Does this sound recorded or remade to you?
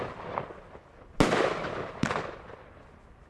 recorded